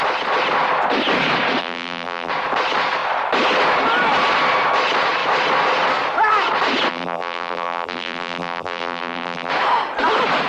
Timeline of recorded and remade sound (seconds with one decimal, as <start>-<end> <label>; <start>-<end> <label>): 0.0-1.6 recorded; 1.6-2.3 remade; 2.3-6.9 recorded; 6.9-9.5 remade; 9.5-10.5 recorded